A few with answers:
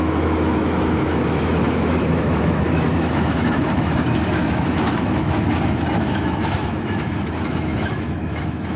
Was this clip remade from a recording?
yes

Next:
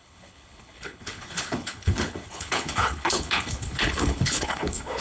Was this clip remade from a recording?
yes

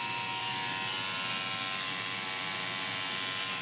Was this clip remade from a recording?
no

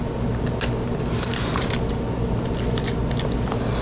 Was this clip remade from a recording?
no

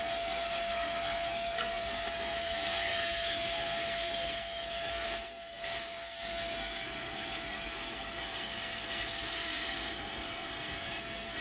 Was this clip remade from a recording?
yes